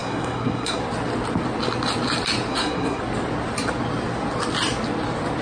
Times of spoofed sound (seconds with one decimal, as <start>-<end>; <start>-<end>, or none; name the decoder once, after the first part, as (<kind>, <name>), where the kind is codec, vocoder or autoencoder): 0.0-0.8 (codec, SNAC); 2.5-3.0